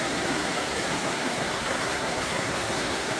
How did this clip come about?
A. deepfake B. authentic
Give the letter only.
A